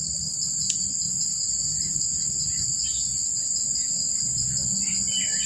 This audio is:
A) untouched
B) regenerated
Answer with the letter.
A